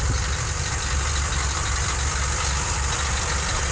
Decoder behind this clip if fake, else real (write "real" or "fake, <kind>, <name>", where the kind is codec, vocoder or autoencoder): real